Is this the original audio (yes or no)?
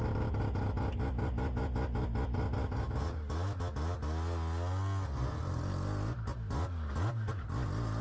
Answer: yes